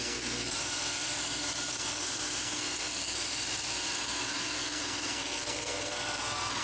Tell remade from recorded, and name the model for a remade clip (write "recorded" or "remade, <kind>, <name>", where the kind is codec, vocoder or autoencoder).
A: remade, codec, SNAC